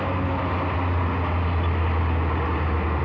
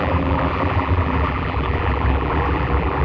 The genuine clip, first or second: first